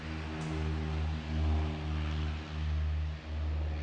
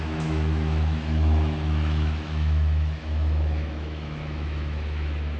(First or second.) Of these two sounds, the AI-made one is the second